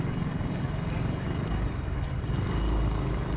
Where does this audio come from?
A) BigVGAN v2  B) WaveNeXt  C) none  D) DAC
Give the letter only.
D